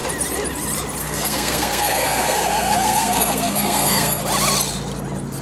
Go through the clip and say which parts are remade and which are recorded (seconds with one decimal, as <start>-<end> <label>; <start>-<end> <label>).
0.0-1.0 recorded; 1.0-4.2 remade; 4.2-5.4 recorded